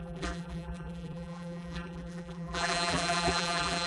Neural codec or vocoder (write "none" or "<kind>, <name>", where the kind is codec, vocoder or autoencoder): vocoder, BigVGAN v2